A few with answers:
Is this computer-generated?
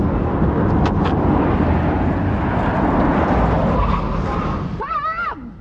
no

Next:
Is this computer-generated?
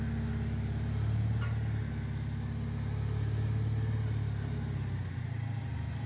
no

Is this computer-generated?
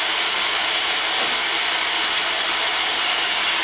no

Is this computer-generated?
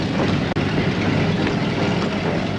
no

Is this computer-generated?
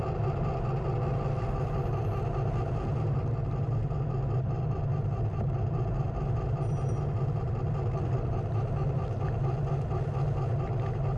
no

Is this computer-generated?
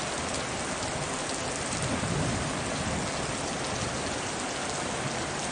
no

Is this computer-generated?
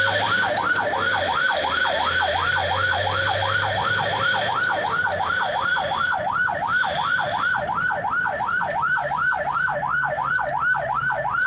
yes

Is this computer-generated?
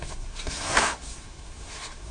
yes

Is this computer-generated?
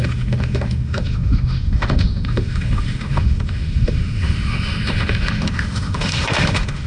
yes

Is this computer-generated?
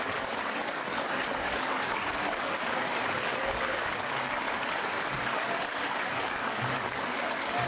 yes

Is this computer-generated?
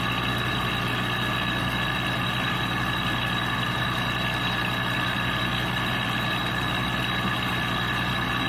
no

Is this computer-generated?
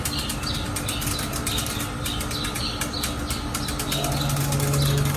no